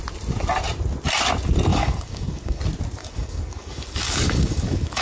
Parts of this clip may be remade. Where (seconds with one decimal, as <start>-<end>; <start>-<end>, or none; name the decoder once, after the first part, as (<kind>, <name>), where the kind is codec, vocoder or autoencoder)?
1.7-2.6 (codec, DAC); 3.0-5.0